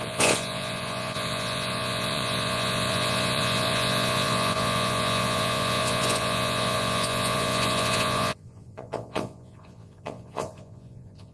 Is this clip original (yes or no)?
no